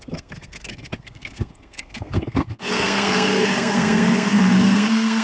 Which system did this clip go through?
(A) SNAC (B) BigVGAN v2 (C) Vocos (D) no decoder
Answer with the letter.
A